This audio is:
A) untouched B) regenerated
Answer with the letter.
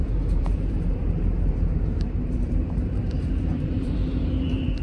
B